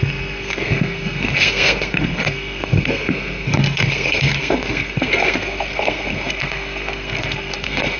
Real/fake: fake